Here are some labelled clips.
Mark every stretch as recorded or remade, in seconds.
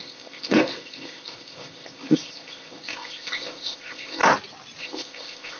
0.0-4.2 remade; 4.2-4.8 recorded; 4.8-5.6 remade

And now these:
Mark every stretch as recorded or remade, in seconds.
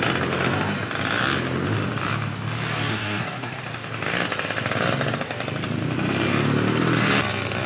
0.0-2.9 recorded; 2.9-3.6 remade; 3.6-7.7 recorded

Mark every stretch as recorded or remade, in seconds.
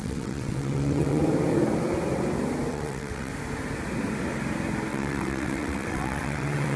0.0-1.2 remade; 1.2-2.7 recorded; 2.7-3.3 remade; 3.3-4.9 recorded; 4.9-6.8 remade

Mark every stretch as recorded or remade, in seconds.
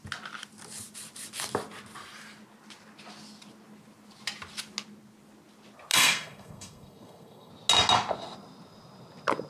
0.0-5.9 recorded; 5.9-7.5 remade; 7.5-9.5 recorded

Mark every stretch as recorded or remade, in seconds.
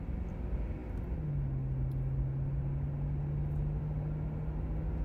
0.0-5.0 recorded